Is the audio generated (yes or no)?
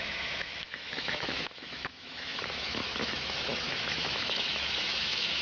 yes